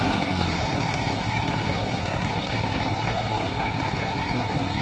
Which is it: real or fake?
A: fake